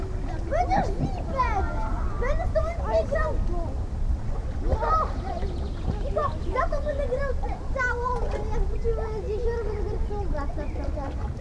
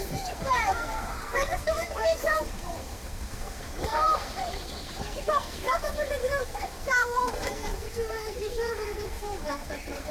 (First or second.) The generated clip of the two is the second